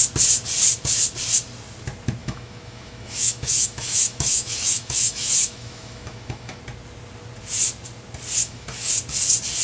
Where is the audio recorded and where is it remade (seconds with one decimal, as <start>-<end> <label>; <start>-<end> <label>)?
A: 0.0-2.2 recorded; 2.2-6.6 remade; 6.6-8.4 recorded; 8.4-8.9 remade; 8.9-9.6 recorded